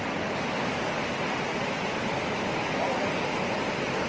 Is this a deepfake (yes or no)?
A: no